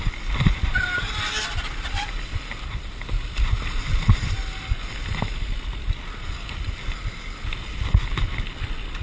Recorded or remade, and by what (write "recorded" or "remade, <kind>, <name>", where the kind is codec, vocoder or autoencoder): recorded